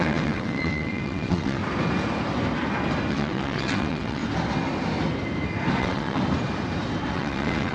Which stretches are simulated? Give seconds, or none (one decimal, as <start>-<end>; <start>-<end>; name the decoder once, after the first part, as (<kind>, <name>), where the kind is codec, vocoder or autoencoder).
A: 0.0-1.6 (vocoder, WaveNeXt); 3.1-4.2; 5.8-6.2; 7.1-7.7

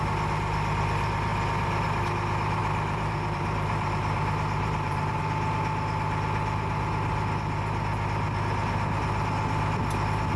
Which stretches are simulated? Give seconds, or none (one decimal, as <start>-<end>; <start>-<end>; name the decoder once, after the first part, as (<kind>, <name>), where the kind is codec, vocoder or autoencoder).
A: 2.6-5.2 (vocoder, BigVGAN v2)